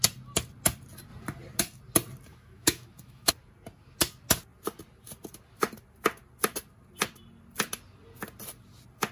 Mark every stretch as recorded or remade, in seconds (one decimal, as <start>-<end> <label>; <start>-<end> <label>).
0.0-2.3 recorded; 2.3-3.3 remade; 3.3-9.1 recorded